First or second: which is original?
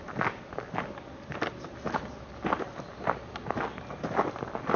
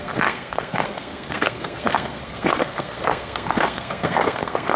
first